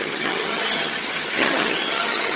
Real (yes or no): no